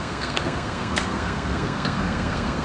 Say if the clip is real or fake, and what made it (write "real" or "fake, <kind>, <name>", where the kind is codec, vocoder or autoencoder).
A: fake, codec, SNAC